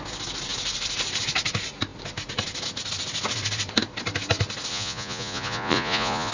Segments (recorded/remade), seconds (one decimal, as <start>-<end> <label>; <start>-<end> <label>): 0.0-4.7 recorded; 4.7-6.3 remade